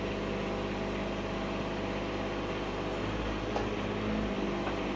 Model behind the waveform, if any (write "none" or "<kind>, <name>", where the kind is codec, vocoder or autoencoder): none